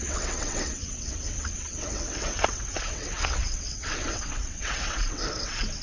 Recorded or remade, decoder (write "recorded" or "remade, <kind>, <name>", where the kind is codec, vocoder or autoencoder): remade, vocoder, WaveNeXt